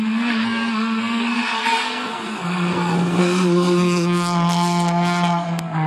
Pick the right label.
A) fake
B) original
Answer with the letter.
A